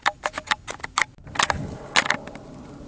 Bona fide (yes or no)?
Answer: yes